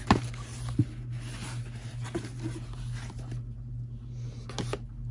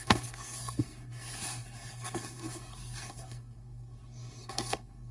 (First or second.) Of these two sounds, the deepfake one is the second